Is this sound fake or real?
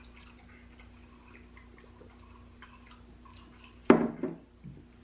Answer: real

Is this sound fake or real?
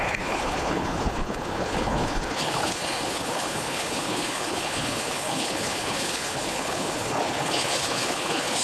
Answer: fake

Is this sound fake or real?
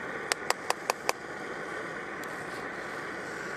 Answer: real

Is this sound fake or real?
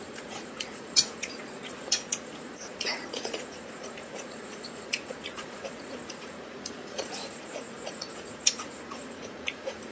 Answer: fake